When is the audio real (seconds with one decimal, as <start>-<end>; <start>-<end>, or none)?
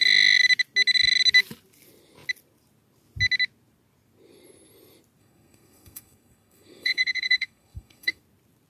0.0-5.2; 8.2-8.7